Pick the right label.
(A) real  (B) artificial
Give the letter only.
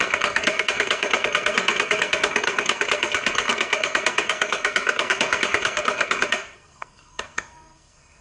B